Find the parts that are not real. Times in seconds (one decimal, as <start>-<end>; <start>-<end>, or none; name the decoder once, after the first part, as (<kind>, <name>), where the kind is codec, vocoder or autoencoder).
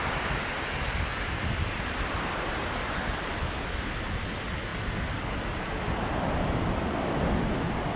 none